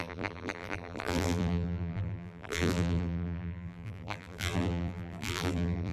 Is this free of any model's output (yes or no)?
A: no